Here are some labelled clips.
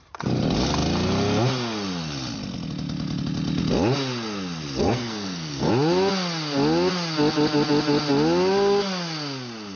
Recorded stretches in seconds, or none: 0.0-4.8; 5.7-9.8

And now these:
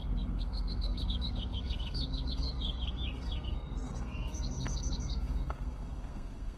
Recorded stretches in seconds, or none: none

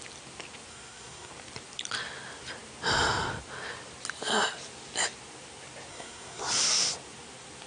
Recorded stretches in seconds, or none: 0.0-0.7; 1.3-5.9; 6.4-7.7

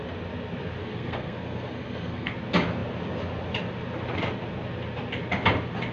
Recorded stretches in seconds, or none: 0.0-0.8; 2.3-5.9